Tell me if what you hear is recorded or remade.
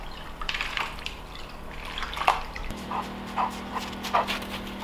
remade